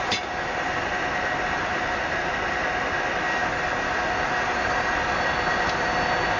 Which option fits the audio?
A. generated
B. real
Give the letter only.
B